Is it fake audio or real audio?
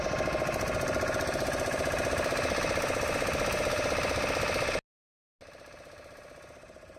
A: real